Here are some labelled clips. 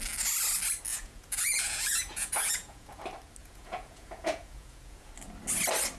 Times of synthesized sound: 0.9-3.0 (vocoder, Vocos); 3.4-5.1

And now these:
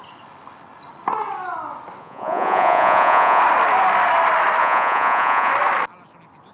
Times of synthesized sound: 2.0-3.4 (vocoder, Vocos); 4.6-5.5

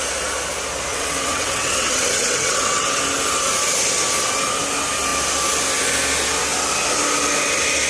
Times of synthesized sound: 0.9-3.0 (vocoder, WaveNeXt)

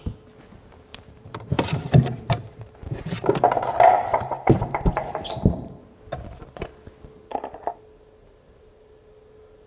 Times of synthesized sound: 0.9-1.8 (vocoder, BigVGAN v2); 2.4-5.8